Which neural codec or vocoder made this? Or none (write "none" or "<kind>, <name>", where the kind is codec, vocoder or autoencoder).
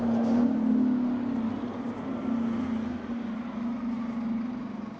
none